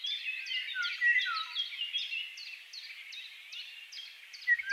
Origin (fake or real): real